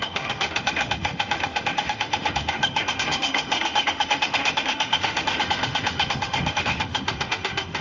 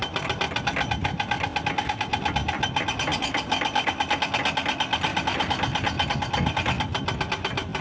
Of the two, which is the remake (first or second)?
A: first